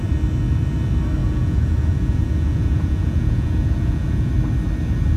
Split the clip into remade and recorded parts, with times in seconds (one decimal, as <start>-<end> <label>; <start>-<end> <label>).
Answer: 0.0-1.2 recorded; 1.2-4.3 remade; 4.3-5.2 recorded